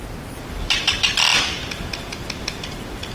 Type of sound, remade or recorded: recorded